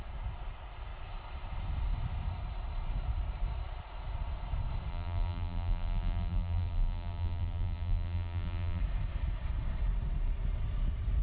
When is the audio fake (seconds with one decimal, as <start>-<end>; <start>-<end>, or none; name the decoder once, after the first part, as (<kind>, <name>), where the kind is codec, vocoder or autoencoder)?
4.9-8.8 (vocoder, BigVGAN v2)